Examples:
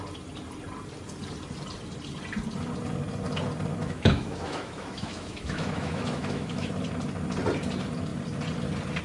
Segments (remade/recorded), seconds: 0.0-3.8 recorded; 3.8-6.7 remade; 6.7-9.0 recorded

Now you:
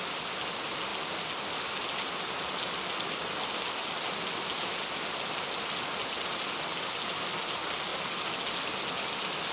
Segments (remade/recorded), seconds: 0.0-9.5 recorded

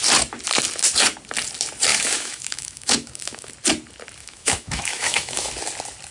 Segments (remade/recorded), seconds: 0.0-1.9 recorded; 1.9-3.5 remade; 3.5-4.2 recorded; 4.2-5.5 remade; 5.5-6.1 recorded

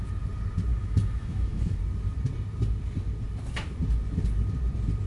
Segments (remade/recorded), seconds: 0.0-0.7 recorded; 0.7-1.8 remade; 1.8-5.1 recorded

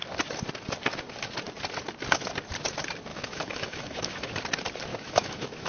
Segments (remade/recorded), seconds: 0.0-3.1 recorded; 3.1-4.4 remade; 4.4-4.9 recorded; 4.9-5.7 remade